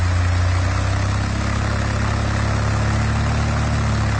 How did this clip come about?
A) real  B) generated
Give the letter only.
A